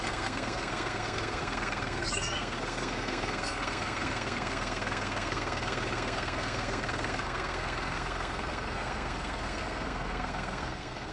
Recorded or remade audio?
remade